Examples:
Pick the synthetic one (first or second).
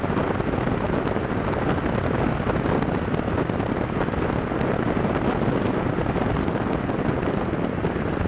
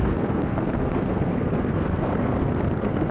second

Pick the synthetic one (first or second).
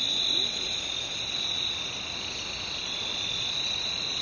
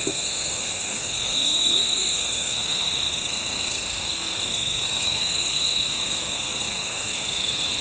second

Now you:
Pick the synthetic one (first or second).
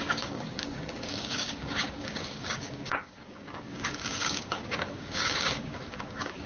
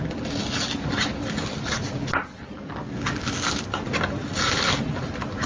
first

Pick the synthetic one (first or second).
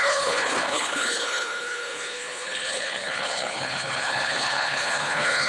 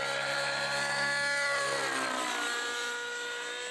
first